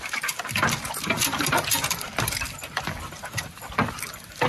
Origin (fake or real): fake